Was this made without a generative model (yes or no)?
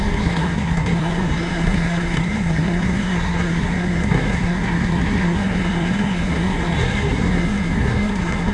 no